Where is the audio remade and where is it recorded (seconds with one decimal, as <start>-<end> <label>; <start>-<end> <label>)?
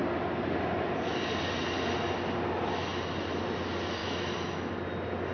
0.0-4.0 recorded; 4.0-4.7 remade; 4.7-5.3 recorded